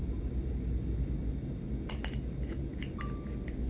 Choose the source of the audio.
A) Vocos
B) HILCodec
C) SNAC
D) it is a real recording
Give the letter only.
D